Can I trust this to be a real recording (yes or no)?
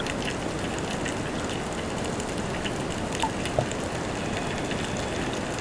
yes